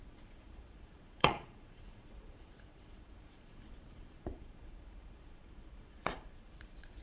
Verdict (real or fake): fake